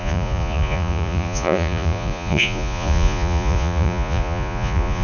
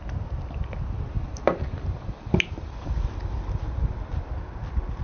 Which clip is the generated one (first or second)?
first